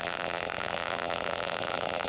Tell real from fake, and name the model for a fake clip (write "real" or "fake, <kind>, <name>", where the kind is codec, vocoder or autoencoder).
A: fake, vocoder, BigVGAN v2